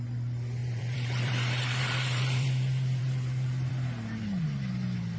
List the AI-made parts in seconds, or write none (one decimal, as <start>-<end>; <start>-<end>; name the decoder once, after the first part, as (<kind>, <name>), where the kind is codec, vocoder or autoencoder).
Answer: 0.6-3.7 (vocoder, BigVGAN v2)